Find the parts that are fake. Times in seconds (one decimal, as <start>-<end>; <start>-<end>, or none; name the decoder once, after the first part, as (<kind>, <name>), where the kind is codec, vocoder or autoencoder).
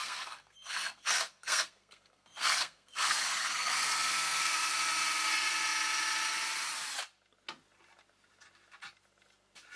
0.0-4.7 (codec, SNAC)